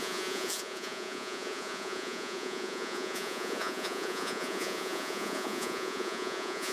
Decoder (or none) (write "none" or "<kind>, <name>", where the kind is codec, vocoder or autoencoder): vocoder, Vocos